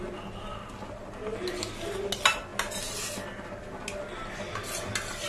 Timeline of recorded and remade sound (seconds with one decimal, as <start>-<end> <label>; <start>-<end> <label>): 0.0-5.3 recorded